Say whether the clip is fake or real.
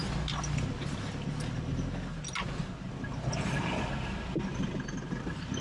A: real